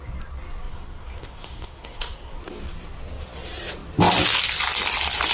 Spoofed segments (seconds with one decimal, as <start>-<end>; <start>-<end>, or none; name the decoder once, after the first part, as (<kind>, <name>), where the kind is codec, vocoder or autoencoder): 0.7-2.4 (codec, SNAC)